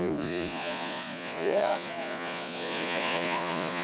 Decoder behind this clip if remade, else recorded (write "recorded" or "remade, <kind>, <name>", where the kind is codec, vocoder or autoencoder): remade, vocoder, Vocos